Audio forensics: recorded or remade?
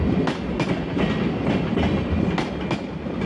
recorded